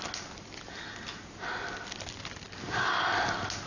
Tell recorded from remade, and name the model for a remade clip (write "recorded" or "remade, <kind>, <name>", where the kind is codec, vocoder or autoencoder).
recorded